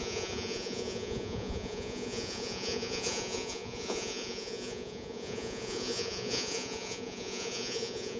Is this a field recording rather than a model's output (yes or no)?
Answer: no